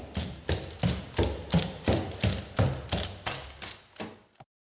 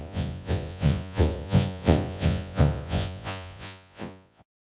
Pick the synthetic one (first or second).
second